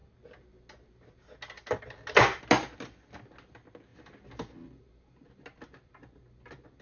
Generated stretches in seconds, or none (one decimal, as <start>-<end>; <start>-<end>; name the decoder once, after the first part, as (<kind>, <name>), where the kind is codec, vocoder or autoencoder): none